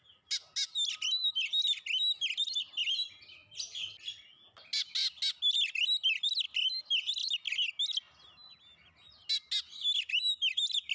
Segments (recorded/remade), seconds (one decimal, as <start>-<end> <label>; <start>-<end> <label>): 0.0-10.9 recorded

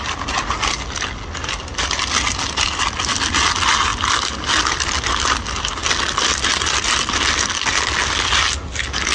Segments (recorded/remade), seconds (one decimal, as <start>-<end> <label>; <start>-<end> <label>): 0.0-9.1 recorded

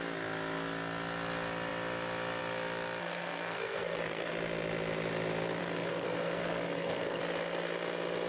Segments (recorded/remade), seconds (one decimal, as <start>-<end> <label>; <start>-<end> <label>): 0.0-3.0 recorded; 3.0-4.3 remade; 4.3-5.6 recorded; 5.6-7.2 remade; 7.2-8.3 recorded

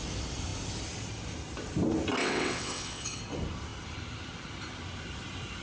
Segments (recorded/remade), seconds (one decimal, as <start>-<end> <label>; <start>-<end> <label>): 0.0-2.2 recorded; 2.2-3.2 remade; 3.2-5.6 recorded

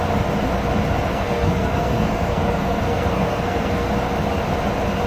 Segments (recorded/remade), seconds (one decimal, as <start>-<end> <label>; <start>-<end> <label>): 0.0-1.1 recorded; 1.1-3.9 remade; 3.9-5.1 recorded

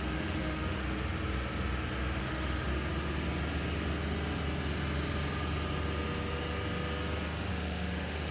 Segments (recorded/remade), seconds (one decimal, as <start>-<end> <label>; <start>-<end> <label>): 0.0-0.8 remade; 0.8-2.2 recorded; 2.2-2.7 remade; 2.7-7.5 recorded; 7.5-8.3 remade

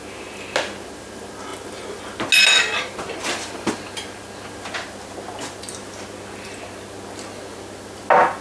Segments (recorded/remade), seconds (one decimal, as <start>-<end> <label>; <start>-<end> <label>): 0.0-8.4 recorded

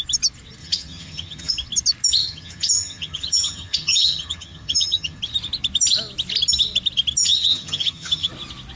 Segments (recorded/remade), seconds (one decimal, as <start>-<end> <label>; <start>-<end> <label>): 0.0-0.6 recorded; 0.6-1.5 remade; 1.5-2.2 recorded; 2.2-5.2 remade; 5.2-7.2 recorded; 7.2-8.3 remade; 8.3-8.8 recorded